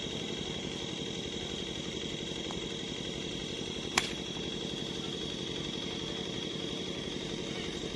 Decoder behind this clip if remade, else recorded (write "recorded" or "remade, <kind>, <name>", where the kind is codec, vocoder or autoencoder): recorded